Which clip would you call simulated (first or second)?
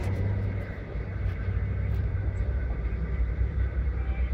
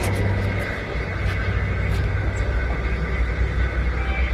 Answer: first